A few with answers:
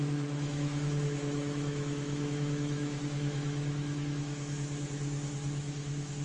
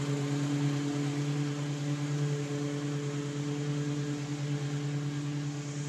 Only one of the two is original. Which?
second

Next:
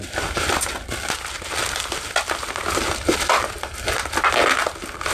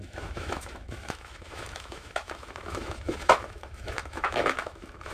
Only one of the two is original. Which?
first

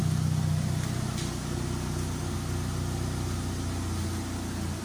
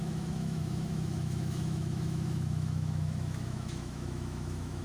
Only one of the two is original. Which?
first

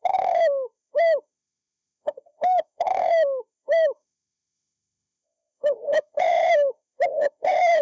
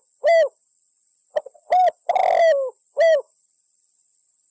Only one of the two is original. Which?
second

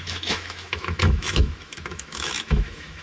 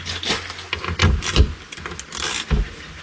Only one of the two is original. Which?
second